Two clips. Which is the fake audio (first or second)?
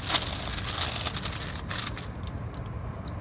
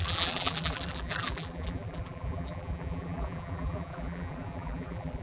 second